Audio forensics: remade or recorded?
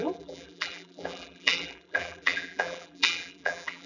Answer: remade